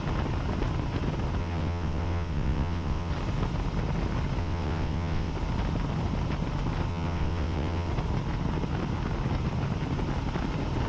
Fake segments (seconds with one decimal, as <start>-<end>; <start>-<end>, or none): 1.4-3.1; 4.4-5.3; 6.9-7.9